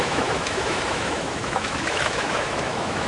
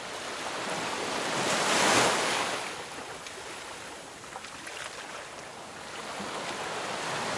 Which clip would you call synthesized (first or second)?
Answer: first